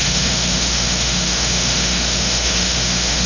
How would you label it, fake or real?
fake